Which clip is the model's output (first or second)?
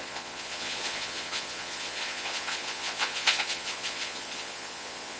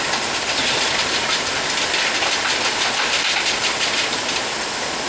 first